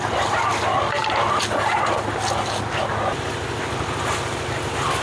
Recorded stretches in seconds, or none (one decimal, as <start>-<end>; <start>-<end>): 0.0-5.0